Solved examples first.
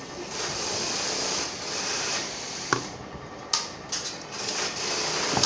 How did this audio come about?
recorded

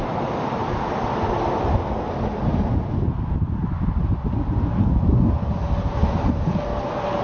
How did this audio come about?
recorded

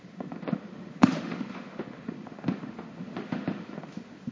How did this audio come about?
remade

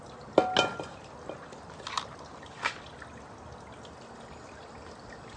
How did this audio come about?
recorded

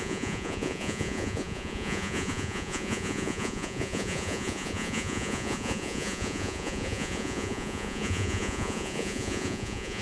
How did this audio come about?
remade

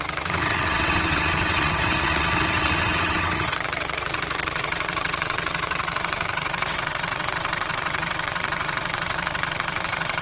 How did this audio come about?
remade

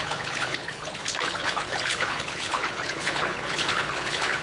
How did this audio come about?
remade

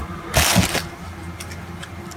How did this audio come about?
recorded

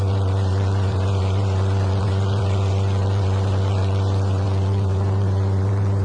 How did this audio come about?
remade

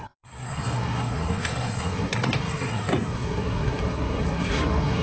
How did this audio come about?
remade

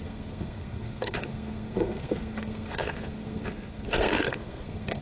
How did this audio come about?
remade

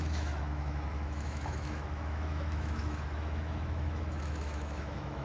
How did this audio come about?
remade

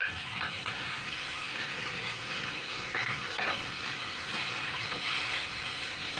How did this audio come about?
remade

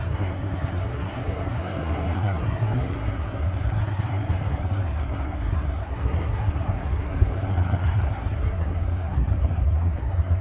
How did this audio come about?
remade